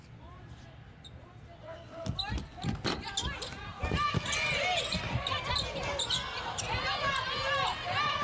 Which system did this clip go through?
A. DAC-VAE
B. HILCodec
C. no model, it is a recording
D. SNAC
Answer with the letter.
C